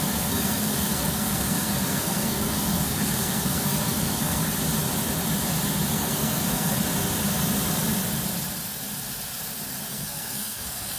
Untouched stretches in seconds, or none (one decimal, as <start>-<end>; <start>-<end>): 4.4-5.9; 6.8-9.9